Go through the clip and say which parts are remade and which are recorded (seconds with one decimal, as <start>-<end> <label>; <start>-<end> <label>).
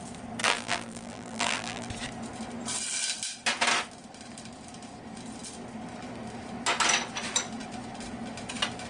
0.0-0.4 recorded; 0.4-1.9 remade; 1.9-8.9 recorded